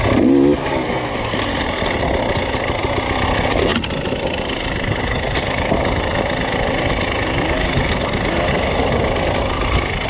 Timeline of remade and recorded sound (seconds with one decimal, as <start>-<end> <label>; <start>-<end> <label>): 0.0-10.1 recorded